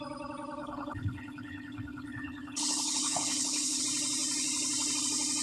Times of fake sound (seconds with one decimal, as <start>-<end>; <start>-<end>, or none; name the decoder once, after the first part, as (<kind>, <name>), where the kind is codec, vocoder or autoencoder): 0.6-3.8 (codec, HILCodec)